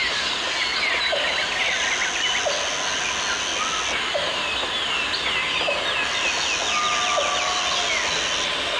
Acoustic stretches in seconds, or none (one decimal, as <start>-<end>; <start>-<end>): 0.0-8.8